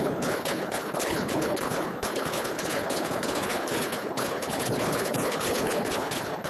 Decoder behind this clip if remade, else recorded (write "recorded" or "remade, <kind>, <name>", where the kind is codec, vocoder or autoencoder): remade, codec, HILCodec